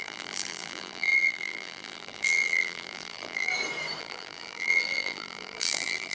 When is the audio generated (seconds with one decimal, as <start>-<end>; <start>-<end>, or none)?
0.0-3.5; 4.0-6.1